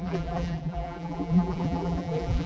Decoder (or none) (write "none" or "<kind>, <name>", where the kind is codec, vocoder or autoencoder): vocoder, BigVGAN v2